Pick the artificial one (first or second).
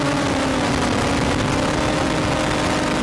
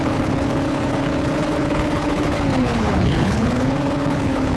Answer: second